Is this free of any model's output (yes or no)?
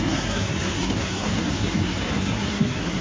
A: no